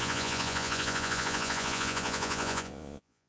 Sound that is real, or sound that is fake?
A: fake